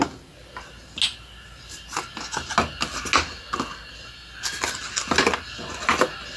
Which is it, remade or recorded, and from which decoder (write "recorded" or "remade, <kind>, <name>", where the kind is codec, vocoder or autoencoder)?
recorded